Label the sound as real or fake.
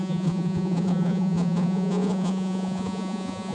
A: fake